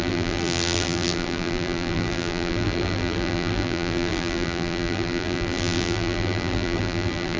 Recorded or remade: remade